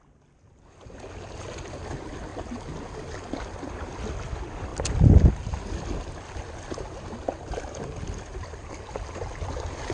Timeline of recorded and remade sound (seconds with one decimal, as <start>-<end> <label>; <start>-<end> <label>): 0.0-9.9 recorded